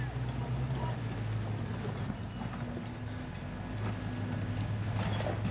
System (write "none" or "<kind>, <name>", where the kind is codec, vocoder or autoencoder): none